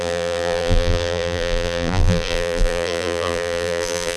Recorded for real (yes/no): no